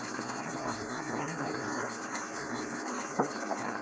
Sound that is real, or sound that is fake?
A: fake